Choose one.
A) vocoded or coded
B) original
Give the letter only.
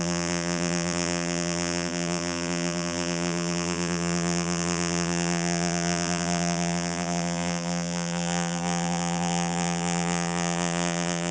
A